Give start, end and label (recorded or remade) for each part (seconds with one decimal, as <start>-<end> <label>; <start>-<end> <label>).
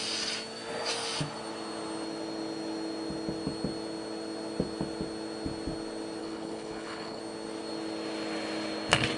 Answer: 0.0-6.2 recorded; 6.2-7.2 remade; 7.2-9.2 recorded